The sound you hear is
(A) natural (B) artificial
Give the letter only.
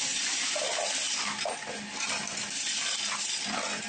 A